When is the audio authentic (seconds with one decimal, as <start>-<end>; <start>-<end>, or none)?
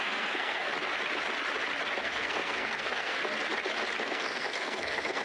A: 0.7-2.0; 3.2-4.0